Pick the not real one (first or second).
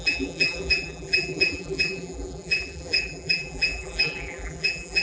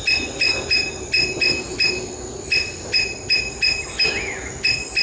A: first